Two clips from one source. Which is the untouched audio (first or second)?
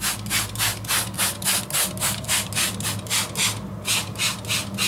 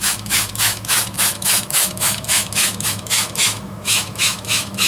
first